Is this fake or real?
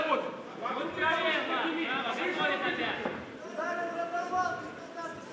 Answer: real